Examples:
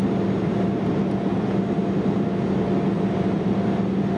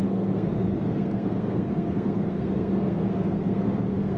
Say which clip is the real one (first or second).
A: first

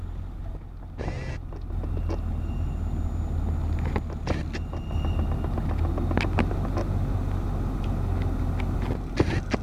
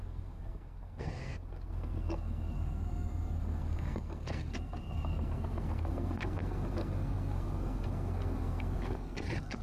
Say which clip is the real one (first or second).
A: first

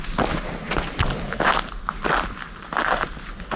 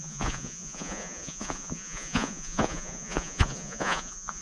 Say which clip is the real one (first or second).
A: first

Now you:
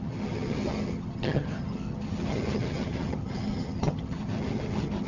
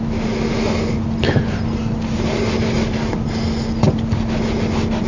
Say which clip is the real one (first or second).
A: second